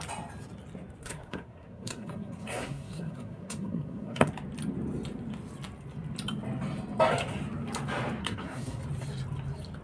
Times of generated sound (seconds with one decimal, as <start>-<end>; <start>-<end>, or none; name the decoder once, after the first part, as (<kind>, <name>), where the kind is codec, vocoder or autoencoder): 1.0-4.3 (codec, SNAC); 8.2-8.8